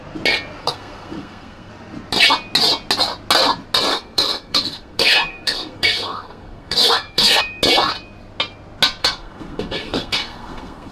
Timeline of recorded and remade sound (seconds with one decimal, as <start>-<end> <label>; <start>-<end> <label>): 0.0-0.6 recorded; 0.6-1.7 remade; 1.7-3.9 recorded; 3.9-7.4 remade; 7.4-9.0 recorded; 9.0-10.9 remade